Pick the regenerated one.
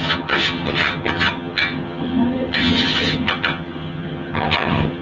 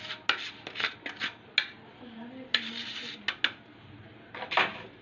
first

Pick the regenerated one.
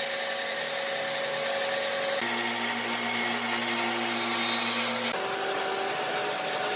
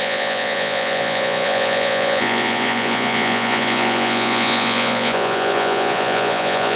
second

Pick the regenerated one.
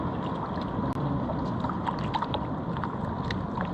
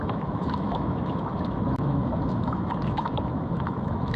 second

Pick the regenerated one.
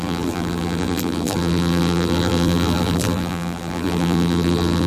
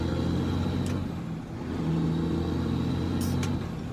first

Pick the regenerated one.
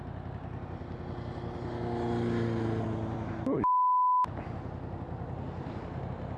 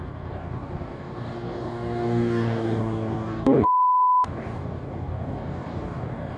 second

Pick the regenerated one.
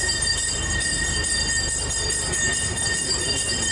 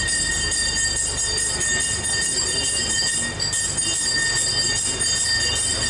first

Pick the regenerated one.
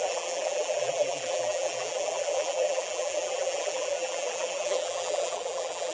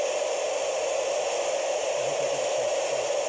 first